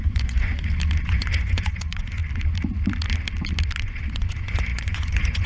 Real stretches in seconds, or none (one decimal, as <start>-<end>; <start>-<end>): 0.5-1.0; 2.2-3.8